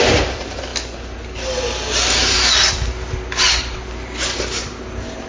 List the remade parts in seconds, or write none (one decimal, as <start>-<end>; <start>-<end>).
none